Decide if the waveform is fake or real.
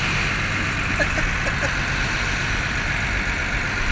real